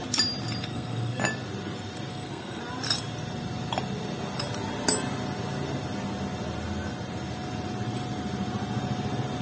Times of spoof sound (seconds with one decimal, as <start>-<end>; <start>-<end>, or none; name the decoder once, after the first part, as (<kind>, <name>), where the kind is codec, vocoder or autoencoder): 0.7-1.2 (codec, SNAC); 2.1-2.6